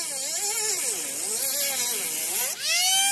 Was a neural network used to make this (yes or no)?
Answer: no